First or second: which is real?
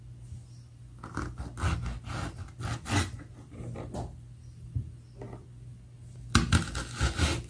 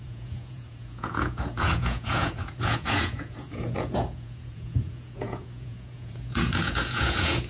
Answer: first